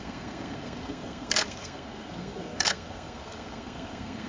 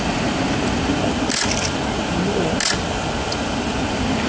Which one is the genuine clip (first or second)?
second